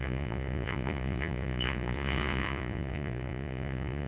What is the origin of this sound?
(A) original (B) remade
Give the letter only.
B